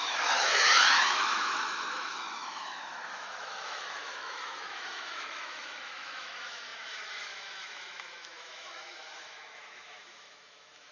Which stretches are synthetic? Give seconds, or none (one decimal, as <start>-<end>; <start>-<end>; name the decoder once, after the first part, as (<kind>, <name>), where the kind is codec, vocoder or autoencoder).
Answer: 0.0-10.9 (autoencoder, DAC-VAE)